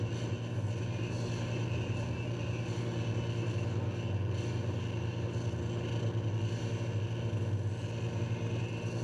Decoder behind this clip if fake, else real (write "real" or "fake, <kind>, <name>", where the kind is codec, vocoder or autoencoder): real